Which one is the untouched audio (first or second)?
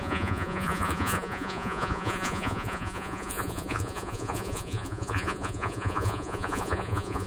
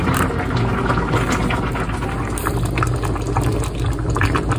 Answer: second